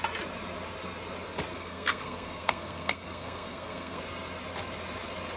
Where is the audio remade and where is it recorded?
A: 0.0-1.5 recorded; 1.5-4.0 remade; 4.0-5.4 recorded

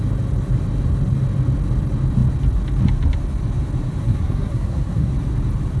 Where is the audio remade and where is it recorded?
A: 0.0-4.0 recorded; 4.0-5.1 remade; 5.1-5.8 recorded